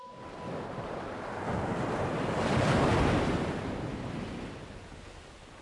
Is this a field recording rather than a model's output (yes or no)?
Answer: yes